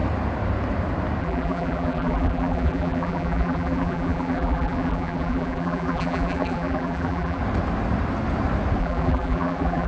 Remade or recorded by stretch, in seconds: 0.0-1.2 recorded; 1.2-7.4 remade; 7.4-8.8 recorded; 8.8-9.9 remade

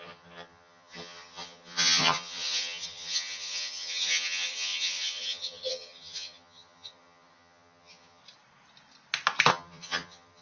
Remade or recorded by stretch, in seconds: 0.0-8.2 remade; 8.2-9.5 recorded; 9.5-10.4 remade